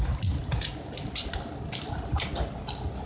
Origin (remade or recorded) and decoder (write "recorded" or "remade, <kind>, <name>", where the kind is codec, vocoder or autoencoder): recorded